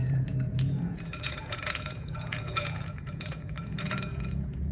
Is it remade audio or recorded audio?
remade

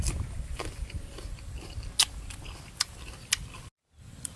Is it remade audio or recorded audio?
recorded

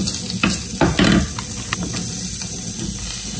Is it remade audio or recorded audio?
recorded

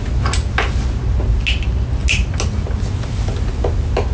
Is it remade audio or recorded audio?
recorded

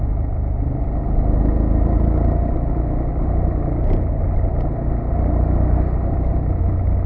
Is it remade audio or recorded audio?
recorded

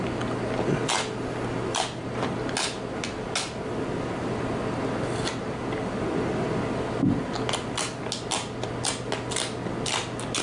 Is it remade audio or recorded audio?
recorded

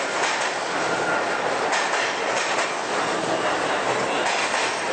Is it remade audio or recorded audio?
recorded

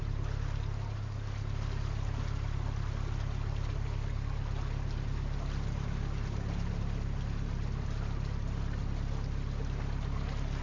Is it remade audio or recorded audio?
recorded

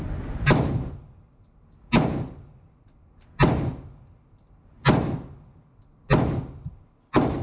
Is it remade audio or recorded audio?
recorded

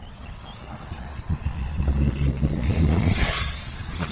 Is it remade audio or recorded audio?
remade